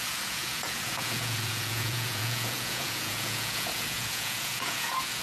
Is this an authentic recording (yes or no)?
no